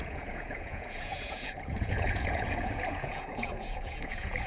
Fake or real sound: fake